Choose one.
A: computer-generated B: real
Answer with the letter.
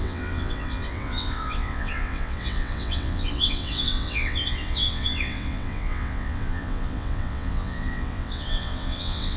A